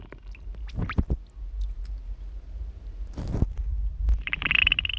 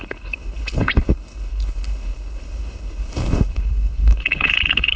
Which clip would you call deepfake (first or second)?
second